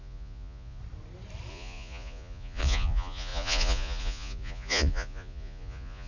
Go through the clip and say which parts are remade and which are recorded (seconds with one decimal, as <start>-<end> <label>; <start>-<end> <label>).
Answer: 0.0-0.8 remade; 0.8-1.5 recorded; 1.5-6.1 remade